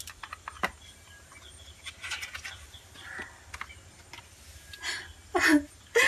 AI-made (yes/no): no